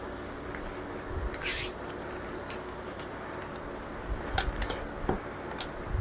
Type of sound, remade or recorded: recorded